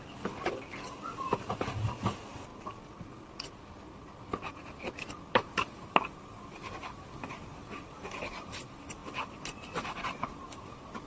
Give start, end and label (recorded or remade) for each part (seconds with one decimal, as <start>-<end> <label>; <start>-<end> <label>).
0.0-11.1 recorded